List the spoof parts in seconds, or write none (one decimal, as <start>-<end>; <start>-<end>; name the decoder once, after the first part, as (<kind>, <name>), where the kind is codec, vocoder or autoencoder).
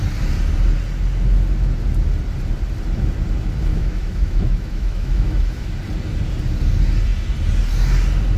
3.7-5.7 (autoencoder, DAC-VAE)